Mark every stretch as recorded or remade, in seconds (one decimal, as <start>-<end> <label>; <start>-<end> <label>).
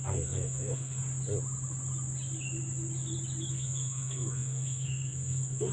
0.0-1.0 remade; 1.0-3.5 recorded; 3.5-5.7 remade